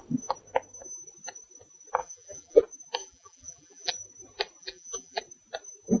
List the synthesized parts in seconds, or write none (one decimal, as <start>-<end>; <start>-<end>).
2.0-2.6; 3.0-3.9; 4.6-5.2